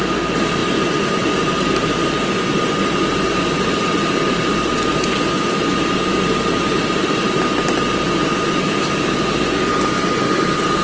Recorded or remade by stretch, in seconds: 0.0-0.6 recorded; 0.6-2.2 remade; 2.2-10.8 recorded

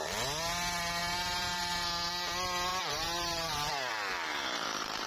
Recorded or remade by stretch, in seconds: 0.0-1.0 recorded; 1.0-2.1 remade; 2.1-2.7 recorded; 2.7-3.9 remade; 3.9-4.3 recorded; 4.3-5.1 remade

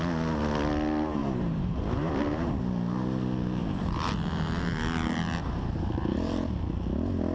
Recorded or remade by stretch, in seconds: 0.0-1.2 recorded; 1.2-2.5 remade; 2.5-3.6 recorded; 3.6-4.1 remade; 4.1-5.4 recorded; 5.4-6.6 remade; 6.6-7.3 recorded